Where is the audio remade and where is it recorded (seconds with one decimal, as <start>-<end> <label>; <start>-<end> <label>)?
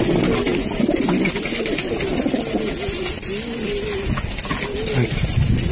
0.0-0.5 recorded; 0.5-1.1 remade; 1.1-5.7 recorded